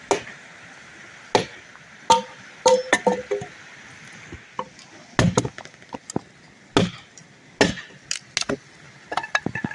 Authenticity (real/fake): real